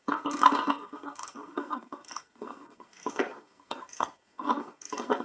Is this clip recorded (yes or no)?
no